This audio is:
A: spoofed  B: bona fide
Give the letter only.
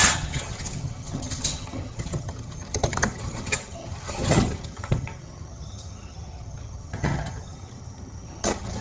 A